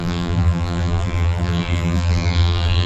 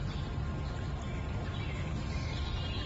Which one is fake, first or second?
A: first